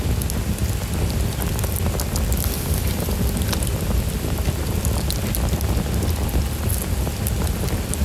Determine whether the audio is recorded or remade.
recorded